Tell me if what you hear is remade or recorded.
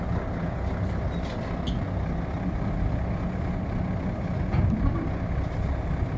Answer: recorded